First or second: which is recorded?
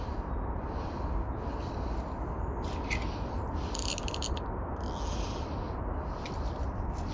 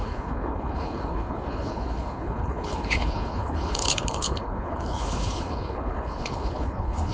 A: first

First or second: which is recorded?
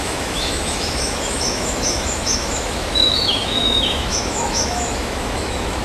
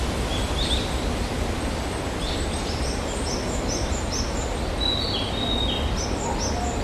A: second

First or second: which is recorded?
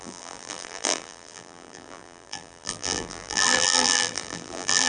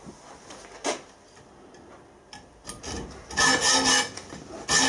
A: second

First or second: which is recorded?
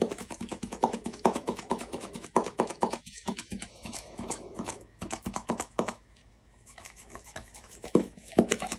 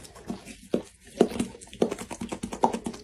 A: second